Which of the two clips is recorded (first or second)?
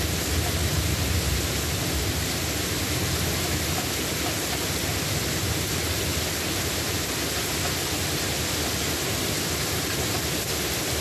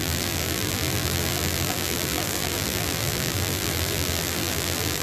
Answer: first